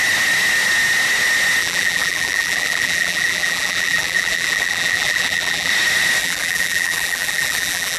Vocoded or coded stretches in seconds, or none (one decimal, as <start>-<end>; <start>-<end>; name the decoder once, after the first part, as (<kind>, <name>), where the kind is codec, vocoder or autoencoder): 1.6-5.7 (vocoder, BigVGAN v2); 6.2-8.0